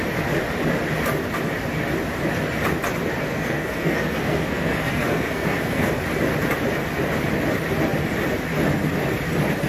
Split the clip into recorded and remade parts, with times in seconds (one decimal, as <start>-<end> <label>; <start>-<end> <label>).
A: 0.0-3.3 recorded; 3.3-5.9 remade; 5.9-9.7 recorded